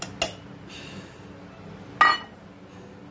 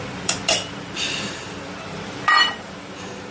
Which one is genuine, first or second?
first